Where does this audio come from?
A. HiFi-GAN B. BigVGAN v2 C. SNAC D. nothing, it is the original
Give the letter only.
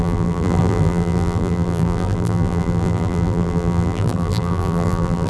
B